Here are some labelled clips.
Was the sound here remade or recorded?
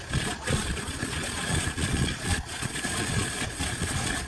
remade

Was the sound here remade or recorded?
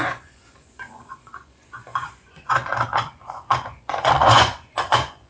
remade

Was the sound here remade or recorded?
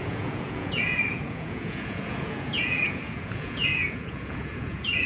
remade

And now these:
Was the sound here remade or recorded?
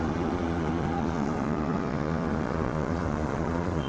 remade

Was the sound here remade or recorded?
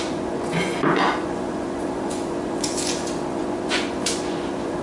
remade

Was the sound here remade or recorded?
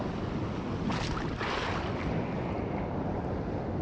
recorded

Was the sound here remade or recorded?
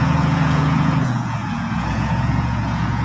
remade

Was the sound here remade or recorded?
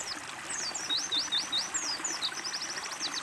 recorded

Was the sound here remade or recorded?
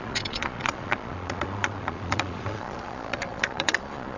remade